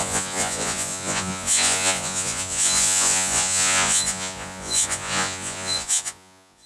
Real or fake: fake